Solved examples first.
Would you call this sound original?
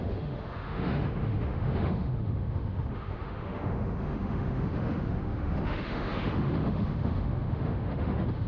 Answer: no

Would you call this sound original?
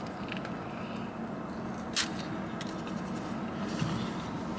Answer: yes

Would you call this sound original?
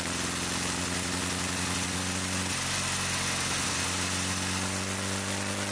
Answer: yes